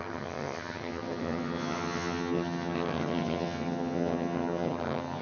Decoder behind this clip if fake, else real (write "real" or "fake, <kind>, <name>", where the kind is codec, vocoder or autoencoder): fake, vocoder, HiFi-GAN